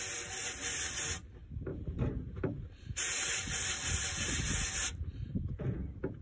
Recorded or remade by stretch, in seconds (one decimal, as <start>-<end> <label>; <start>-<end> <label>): 0.0-0.4 recorded; 0.4-1.2 remade; 1.2-1.7 recorded; 1.7-5.4 remade; 5.4-6.2 recorded